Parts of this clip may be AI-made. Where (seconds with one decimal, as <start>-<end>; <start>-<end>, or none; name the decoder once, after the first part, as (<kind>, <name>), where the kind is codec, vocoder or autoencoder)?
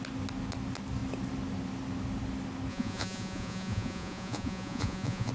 2.7-5.3 (vocoder, Vocos)